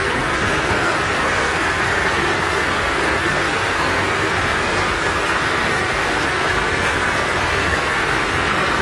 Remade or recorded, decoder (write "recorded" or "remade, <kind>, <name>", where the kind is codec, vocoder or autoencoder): remade, codec, SNAC